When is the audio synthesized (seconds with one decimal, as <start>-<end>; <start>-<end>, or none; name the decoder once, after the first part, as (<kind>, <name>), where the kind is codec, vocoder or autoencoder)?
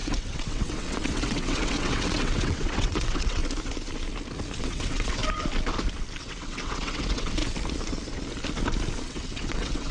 0.0-3.4 (vocoder, WaveNeXt); 4.6-5.2; 6.2-7.4; 9.0-9.9